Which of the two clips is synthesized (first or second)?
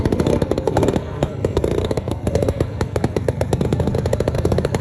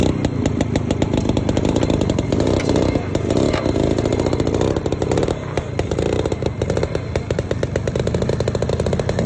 first